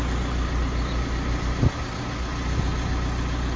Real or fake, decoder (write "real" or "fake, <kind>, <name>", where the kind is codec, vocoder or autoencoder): real